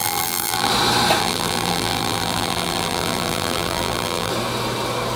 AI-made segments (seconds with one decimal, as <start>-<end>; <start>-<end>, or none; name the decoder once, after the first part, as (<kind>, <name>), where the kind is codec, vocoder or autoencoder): 0.0-0.7 (vocoder, BigVGAN v2); 1.2-4.3